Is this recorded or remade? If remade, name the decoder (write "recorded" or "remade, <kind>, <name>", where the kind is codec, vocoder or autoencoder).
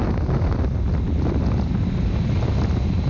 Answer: recorded